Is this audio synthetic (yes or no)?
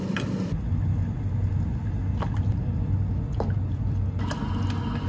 no